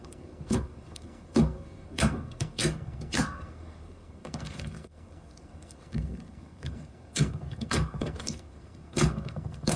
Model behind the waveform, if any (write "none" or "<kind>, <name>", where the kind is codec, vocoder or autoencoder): codec, SNAC